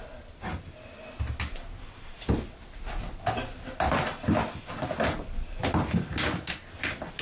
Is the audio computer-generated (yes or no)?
no